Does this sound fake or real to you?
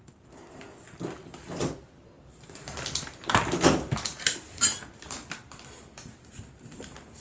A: real